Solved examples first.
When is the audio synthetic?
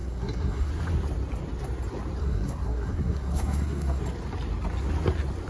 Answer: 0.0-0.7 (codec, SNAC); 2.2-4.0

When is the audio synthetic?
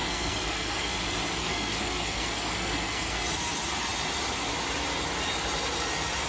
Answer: 0.0-0.9 (codec, SNAC); 1.4-3.2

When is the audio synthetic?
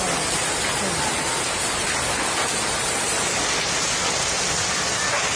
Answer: none